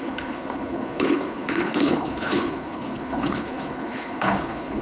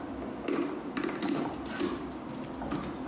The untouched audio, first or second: second